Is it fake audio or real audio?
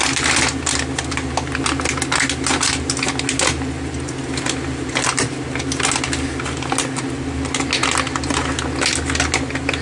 real